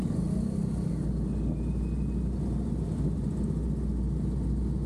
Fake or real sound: real